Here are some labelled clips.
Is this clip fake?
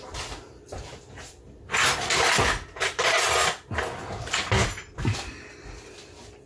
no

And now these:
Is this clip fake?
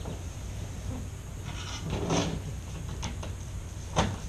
no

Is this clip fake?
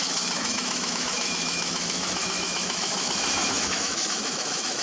yes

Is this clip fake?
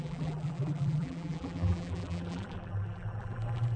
yes